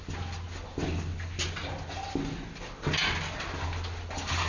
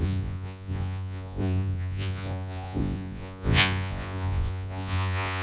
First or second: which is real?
first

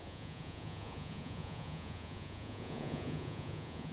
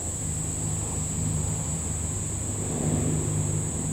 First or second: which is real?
second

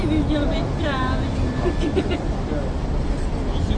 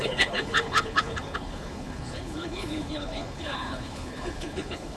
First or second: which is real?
first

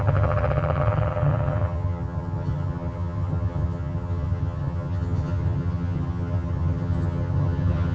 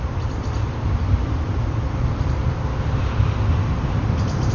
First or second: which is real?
second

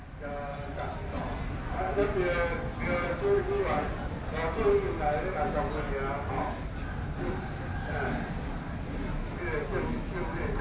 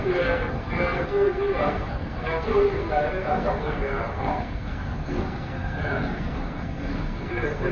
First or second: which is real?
first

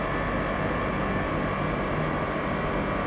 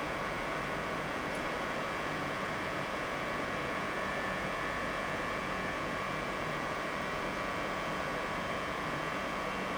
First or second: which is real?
first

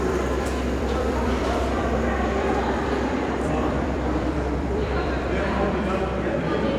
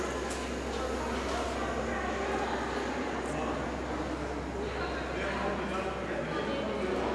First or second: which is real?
second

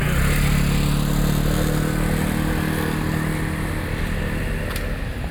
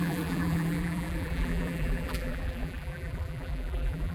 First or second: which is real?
first